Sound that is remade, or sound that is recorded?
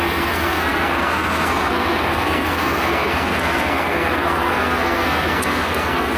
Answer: remade